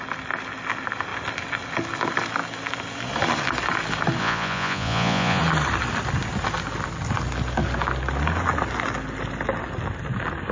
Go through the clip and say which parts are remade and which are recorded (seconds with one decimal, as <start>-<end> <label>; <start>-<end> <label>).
0.0-4.2 recorded; 4.2-5.4 remade; 5.4-10.5 recorded